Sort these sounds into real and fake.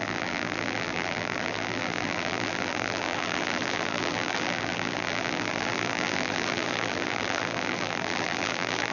fake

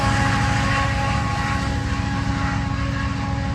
real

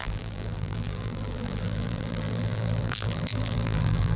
fake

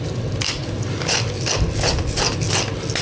real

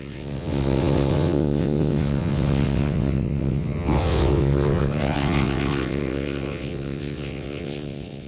fake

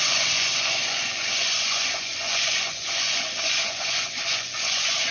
fake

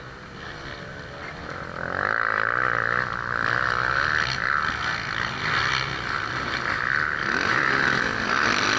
real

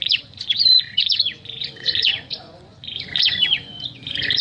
fake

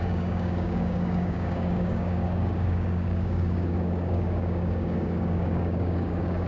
fake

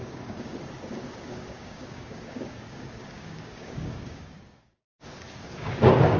fake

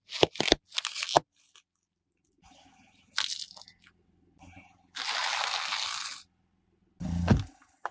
real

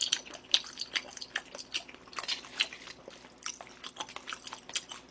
real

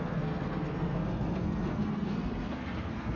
fake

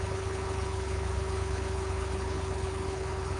fake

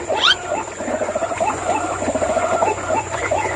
fake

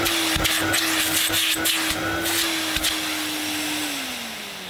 real